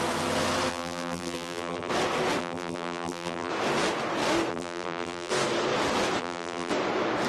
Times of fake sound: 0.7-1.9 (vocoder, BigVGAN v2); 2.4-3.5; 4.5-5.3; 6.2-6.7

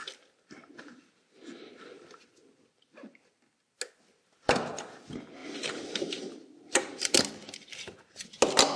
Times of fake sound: 5.4-7.2 (vocoder, BigVGAN v2)

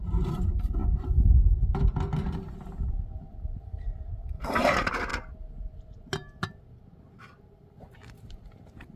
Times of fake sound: 0.0-0.8 (vocoder, BigVGAN v2); 3.6-5.1; 7.2-9.0

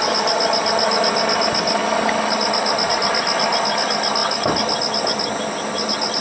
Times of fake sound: none

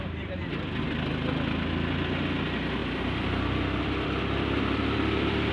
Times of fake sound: 2.8-5.5 (vocoder, BigVGAN v2)